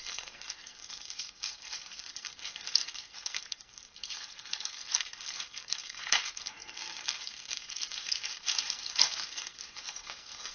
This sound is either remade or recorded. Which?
remade